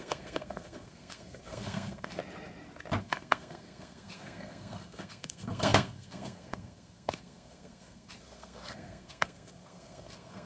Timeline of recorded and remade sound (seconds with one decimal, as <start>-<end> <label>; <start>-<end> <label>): 0.0-2.2 remade; 2.2-3.0 recorded; 3.0-10.5 remade